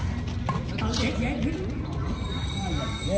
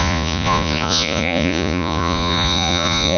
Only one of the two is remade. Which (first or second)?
second